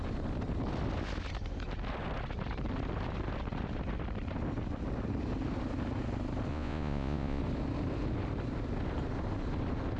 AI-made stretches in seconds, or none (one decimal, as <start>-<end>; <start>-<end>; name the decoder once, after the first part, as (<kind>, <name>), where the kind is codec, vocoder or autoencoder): 6.5-7.4 (vocoder, Vocos)